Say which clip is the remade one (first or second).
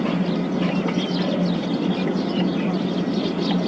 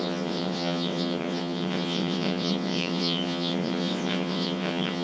second